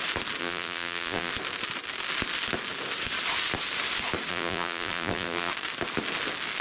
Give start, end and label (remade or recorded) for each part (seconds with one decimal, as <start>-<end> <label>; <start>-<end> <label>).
0.0-0.4 recorded; 0.4-1.3 remade; 1.3-4.3 recorded; 4.3-5.5 remade; 5.5-6.6 recorded